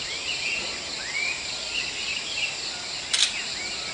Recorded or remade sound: recorded